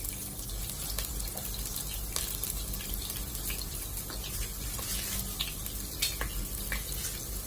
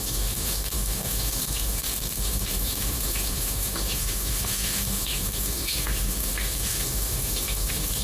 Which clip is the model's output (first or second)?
second